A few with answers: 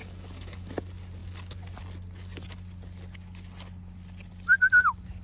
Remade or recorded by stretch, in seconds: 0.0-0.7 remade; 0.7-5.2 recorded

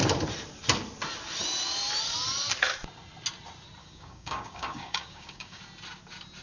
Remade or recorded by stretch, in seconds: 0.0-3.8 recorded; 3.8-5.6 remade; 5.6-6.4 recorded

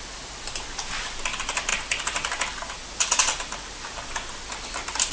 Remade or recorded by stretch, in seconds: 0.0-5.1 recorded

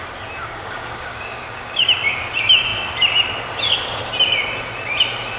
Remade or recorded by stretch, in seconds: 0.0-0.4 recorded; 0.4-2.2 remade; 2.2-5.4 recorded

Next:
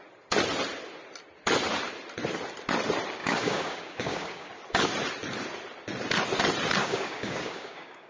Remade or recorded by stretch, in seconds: 0.0-3.2 recorded; 3.2-4.5 remade; 4.5-6.8 recorded; 6.8-8.1 remade